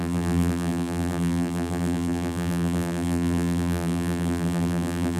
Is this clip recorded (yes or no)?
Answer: no